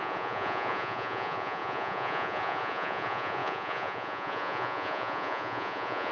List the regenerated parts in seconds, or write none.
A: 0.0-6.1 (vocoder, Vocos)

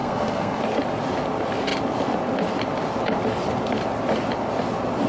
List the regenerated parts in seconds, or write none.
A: 0.0-0.6 (codec, SNAC)

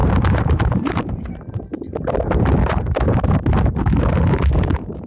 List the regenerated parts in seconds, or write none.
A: 0.0-3.1 (vocoder, BigVGAN v2)